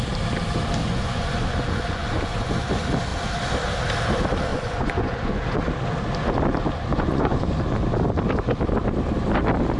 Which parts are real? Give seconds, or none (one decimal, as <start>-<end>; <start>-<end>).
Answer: 0.0-0.8; 2.5-4.5; 5.6-6.9; 7.5-9.8